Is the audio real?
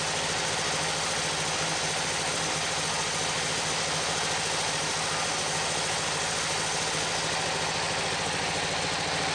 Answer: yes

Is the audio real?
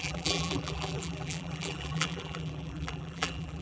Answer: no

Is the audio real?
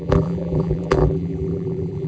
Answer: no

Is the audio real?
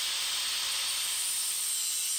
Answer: yes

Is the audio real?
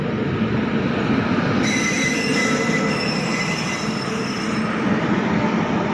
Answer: no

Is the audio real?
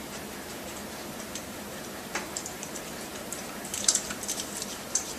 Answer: no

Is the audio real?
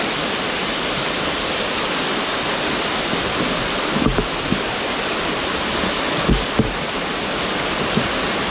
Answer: yes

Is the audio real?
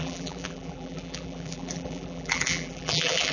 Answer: no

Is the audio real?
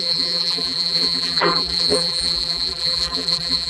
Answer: no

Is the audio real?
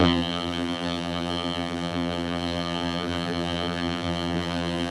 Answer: no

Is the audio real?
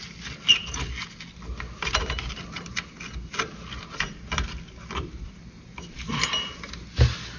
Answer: yes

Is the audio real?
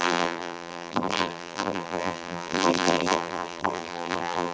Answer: no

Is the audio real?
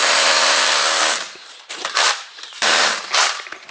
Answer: no